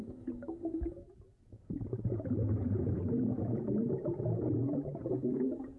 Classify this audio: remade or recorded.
remade